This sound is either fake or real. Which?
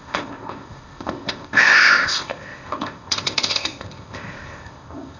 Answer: fake